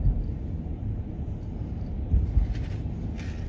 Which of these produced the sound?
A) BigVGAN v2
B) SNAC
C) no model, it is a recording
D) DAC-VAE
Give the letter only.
C